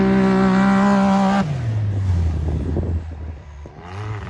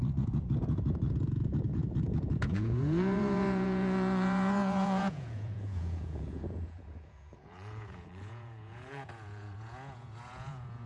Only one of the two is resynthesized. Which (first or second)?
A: second